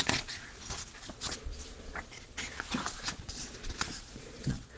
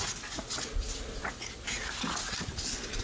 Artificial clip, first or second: first